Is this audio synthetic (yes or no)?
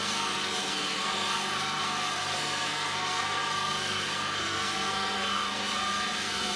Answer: yes